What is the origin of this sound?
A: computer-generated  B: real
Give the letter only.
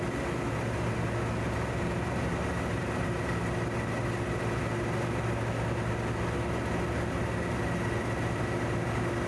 B